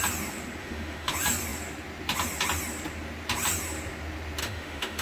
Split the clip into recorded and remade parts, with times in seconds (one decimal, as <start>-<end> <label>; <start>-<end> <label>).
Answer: 0.0-0.6 recorded; 0.6-1.1 remade; 1.1-4.4 recorded; 4.4-5.0 remade